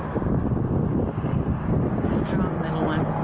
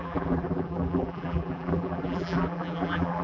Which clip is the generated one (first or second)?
second